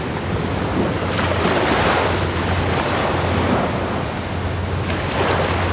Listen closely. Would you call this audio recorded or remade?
recorded